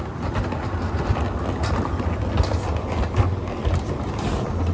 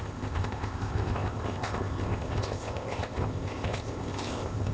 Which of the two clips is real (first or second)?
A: first